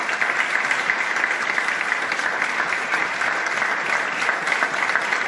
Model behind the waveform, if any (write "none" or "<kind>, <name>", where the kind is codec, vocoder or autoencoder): none